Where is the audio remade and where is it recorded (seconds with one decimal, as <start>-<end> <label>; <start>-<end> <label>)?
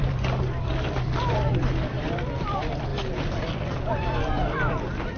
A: 0.0-2.9 remade; 2.9-3.4 recorded; 3.4-5.2 remade